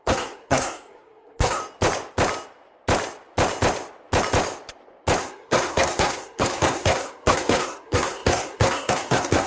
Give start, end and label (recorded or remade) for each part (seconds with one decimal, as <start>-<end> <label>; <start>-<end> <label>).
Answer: 0.0-1.6 remade; 1.6-5.2 recorded; 5.2-9.5 remade